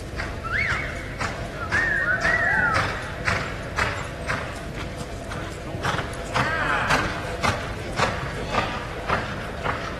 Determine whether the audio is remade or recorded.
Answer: recorded